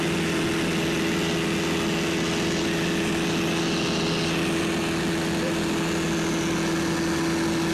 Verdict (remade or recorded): recorded